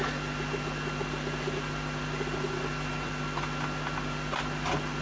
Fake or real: real